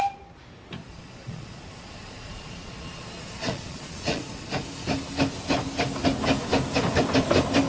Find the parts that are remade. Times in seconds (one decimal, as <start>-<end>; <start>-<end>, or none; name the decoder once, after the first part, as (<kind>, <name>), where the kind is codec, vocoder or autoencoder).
1.0-4.2 (vocoder, Vocos)